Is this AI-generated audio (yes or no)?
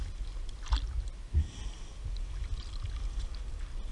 no